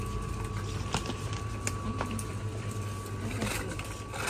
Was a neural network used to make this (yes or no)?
no